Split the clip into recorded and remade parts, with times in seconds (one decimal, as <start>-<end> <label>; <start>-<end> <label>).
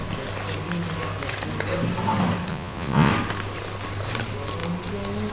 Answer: 0.0-2.5 recorded; 2.5-3.1 remade; 3.1-5.3 recorded